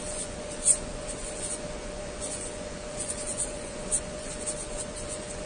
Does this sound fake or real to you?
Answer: fake